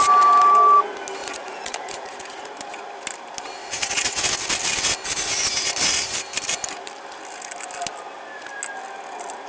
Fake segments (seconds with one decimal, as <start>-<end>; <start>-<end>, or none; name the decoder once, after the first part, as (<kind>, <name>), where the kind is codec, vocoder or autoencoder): 1.2-2.5 (vocoder, Vocos); 3.6-4.2